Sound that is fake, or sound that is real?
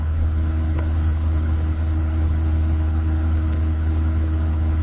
fake